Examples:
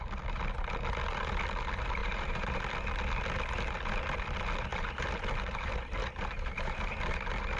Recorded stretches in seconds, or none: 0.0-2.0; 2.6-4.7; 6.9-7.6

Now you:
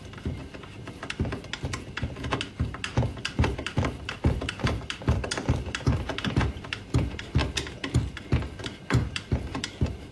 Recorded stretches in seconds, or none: 0.4-3.2; 7.4-8.6